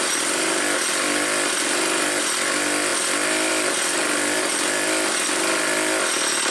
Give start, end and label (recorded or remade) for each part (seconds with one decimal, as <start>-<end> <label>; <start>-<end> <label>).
0.0-6.5 recorded

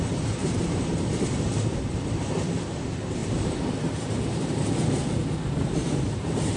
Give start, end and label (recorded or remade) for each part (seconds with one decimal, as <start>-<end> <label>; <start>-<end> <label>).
0.0-0.4 recorded; 0.4-1.2 remade; 1.2-3.2 recorded; 3.2-6.6 remade

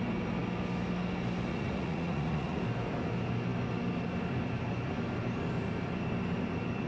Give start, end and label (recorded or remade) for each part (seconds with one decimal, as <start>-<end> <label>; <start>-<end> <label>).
0.0-1.5 recorded; 1.5-2.6 remade; 2.6-6.9 recorded

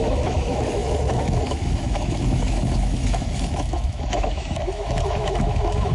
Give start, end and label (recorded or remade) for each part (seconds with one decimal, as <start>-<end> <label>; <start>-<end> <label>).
0.0-5.9 remade

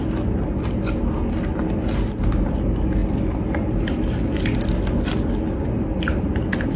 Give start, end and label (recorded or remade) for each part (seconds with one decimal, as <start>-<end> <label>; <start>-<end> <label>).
0.0-6.8 recorded

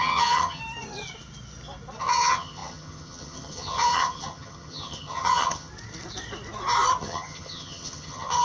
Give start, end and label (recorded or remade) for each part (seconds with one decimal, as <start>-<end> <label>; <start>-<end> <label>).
0.0-0.6 remade; 0.6-2.0 recorded; 2.0-5.7 remade; 5.7-7.0 recorded; 7.0-8.4 remade

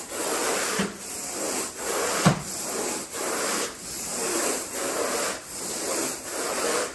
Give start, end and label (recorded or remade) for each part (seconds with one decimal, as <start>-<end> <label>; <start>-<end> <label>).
0.0-0.4 recorded; 0.4-2.2 remade; 2.2-3.8 recorded; 3.8-5.1 remade; 5.1-6.9 recorded

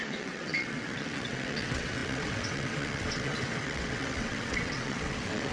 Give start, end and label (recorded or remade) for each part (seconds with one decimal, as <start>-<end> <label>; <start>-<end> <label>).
0.0-5.5 remade